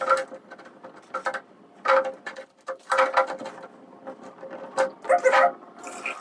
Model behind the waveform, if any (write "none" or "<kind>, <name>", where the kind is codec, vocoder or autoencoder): none